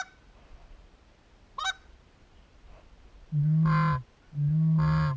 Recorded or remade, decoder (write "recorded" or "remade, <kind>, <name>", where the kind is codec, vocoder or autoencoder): recorded